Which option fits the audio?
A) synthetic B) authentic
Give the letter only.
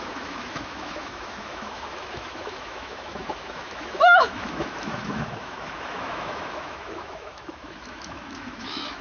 A